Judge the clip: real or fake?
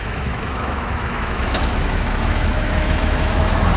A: fake